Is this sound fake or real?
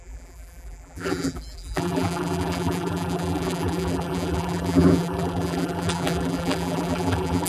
fake